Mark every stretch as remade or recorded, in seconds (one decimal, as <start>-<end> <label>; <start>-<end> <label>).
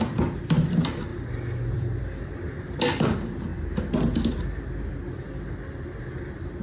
0.0-1.1 recorded; 1.1-2.8 remade; 2.8-6.6 recorded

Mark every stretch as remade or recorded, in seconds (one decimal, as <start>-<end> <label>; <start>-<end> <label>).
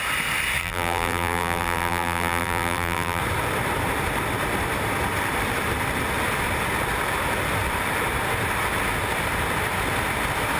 0.0-0.6 recorded; 0.6-3.2 remade; 3.2-10.6 recorded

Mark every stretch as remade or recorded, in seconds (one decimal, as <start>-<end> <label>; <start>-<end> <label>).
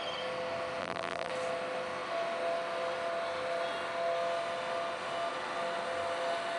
0.0-0.8 recorded; 0.8-1.3 remade; 1.3-6.6 recorded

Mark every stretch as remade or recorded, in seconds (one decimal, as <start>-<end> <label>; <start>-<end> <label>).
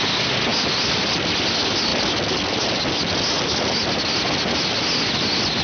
0.0-5.6 recorded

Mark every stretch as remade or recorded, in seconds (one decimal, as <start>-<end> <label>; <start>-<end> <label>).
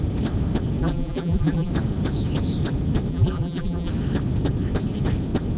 0.0-0.8 recorded; 0.8-1.7 remade; 1.7-3.1 recorded; 3.1-3.9 remade; 3.9-5.6 recorded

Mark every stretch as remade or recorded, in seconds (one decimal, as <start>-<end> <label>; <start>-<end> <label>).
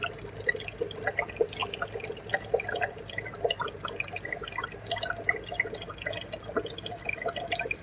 0.0-7.8 recorded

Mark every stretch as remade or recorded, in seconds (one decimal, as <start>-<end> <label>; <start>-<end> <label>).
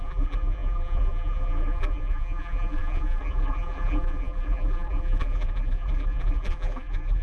0.0-7.2 remade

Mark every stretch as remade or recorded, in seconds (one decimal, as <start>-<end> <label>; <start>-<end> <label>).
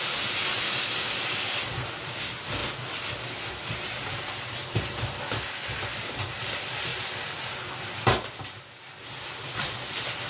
0.0-5.9 recorded; 5.9-6.5 remade; 6.5-6.9 recorded; 6.9-7.9 remade; 7.9-10.3 recorded